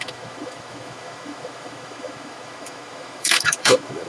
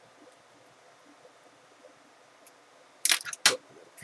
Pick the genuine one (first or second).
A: second